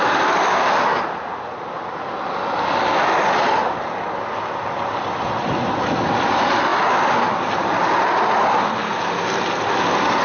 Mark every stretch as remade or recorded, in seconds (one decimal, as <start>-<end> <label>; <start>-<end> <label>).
0.0-10.2 recorded